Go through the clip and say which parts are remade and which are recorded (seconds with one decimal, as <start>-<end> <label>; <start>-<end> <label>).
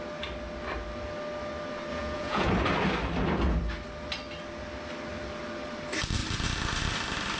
0.0-1.9 recorded; 1.9-2.5 remade; 2.5-7.4 recorded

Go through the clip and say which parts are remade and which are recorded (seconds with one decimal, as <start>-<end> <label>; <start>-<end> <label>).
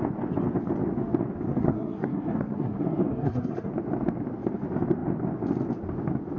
0.0-1.5 recorded; 1.5-3.7 remade; 3.7-6.4 recorded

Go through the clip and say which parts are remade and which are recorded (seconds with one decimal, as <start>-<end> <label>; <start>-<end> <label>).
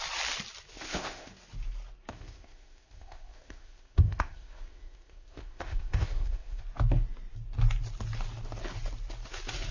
0.0-0.7 recorded; 0.7-1.3 remade; 1.3-2.1 recorded; 2.1-6.6 remade; 6.6-9.7 recorded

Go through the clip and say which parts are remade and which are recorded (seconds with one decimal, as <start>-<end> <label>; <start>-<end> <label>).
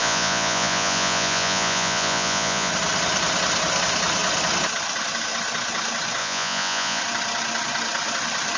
0.0-2.7 remade; 2.7-6.2 recorded; 6.2-7.0 remade; 7.0-8.6 recorded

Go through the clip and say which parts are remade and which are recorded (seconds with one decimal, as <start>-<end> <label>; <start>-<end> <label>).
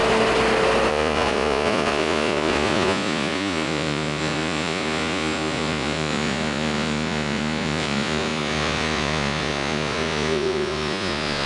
0.0-0.9 recorded; 0.9-11.5 remade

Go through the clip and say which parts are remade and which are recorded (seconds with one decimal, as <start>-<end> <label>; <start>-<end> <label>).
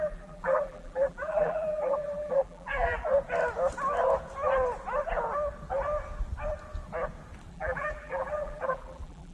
0.0-3.1 remade; 3.1-7.5 recorded; 7.5-9.3 remade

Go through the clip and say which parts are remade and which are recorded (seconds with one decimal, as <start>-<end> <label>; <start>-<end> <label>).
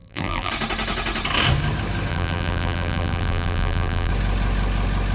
0.0-0.5 remade; 0.5-2.1 recorded; 2.1-4.1 remade; 4.1-5.1 recorded